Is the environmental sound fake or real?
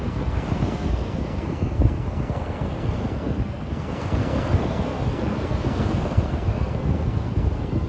fake